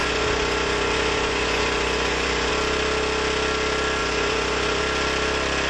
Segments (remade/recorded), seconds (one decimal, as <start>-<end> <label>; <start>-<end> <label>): 0.0-2.5 remade; 2.5-4.0 recorded; 4.0-4.8 remade; 4.8-5.7 recorded